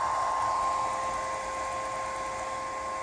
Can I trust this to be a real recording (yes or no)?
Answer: yes